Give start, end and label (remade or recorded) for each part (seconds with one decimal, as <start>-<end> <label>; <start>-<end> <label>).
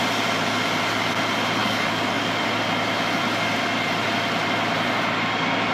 0.0-1.6 recorded; 1.6-2.5 remade; 2.5-5.7 recorded